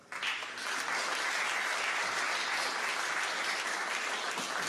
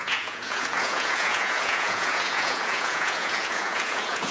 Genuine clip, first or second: first